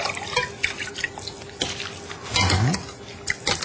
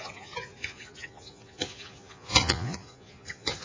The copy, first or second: second